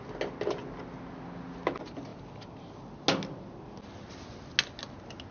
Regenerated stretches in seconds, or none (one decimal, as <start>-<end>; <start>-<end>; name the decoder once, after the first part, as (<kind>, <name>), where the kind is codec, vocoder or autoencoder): none